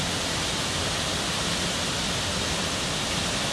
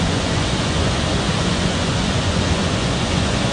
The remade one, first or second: second